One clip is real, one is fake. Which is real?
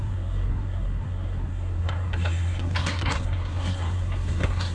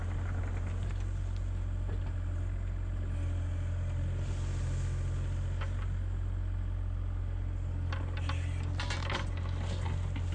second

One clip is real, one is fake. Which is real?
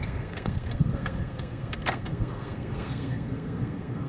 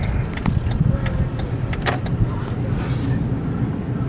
second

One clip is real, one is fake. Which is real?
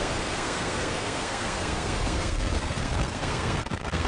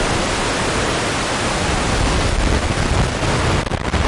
second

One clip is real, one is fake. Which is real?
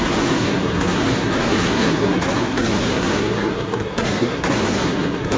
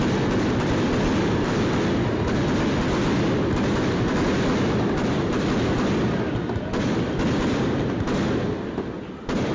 second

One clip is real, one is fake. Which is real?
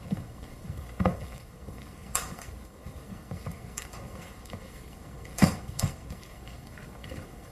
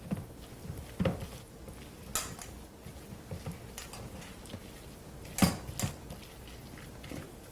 second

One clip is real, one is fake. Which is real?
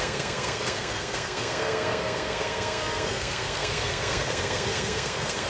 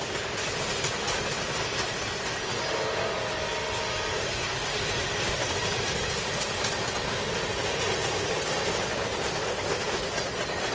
second